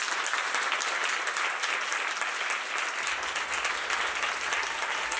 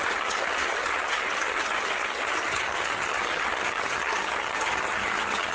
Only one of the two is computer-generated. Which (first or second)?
second